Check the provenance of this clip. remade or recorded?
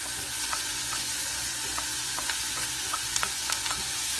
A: remade